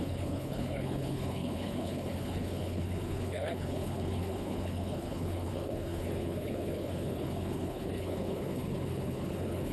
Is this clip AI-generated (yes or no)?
yes